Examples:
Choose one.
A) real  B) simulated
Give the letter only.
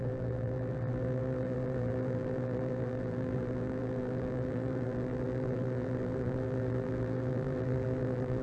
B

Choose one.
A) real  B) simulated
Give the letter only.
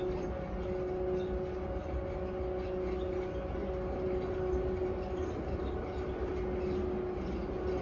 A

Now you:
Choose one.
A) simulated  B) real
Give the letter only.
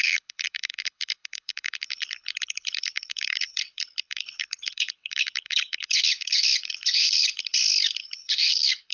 A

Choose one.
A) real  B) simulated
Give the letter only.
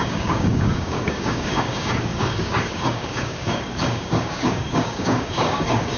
B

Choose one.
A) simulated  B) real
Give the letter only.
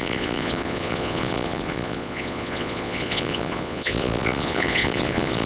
A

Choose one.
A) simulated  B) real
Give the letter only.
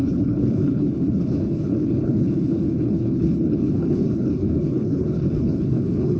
A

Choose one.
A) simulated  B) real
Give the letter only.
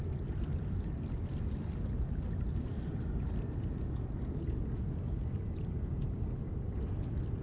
B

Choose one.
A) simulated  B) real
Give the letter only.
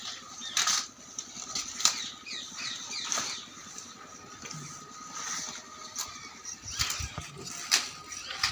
B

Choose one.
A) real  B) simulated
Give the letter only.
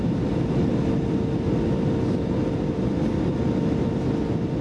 A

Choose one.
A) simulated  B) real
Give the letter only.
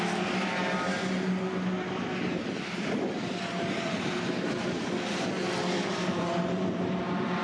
B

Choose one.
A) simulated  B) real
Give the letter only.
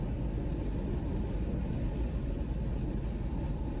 B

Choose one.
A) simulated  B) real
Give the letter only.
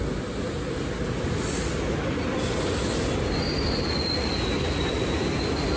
B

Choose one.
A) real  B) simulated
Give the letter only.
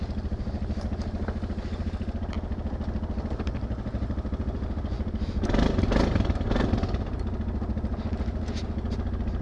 A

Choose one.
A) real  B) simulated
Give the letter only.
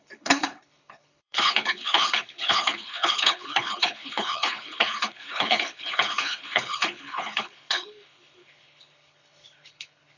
B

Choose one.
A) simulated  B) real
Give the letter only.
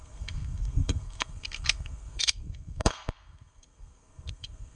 A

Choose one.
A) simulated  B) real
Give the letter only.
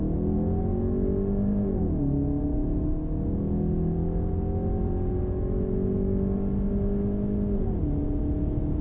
B